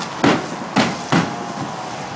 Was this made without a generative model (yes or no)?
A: yes